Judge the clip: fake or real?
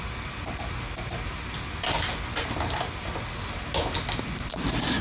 real